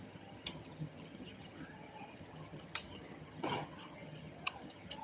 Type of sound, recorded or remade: remade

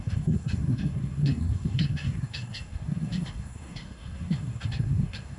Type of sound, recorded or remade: remade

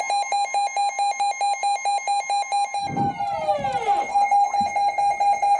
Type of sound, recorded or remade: recorded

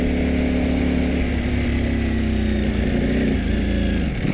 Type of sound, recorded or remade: recorded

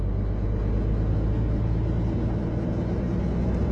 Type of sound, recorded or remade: recorded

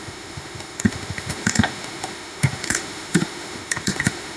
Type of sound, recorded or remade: remade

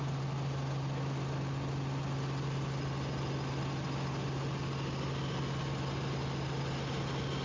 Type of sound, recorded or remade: recorded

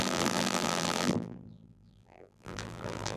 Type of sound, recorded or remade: remade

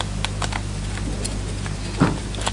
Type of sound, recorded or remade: recorded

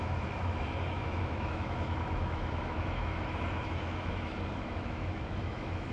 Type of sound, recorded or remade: remade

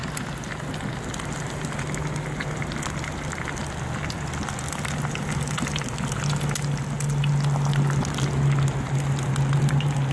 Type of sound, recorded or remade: recorded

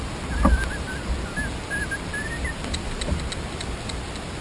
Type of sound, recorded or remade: recorded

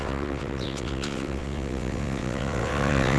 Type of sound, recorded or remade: remade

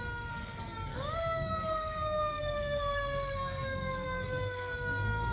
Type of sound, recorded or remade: remade